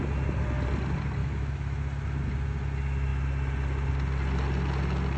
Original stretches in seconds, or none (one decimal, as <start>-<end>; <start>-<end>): 0.0-1.2; 1.8-5.2